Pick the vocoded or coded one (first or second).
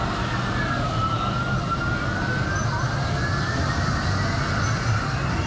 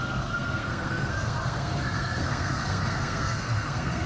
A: second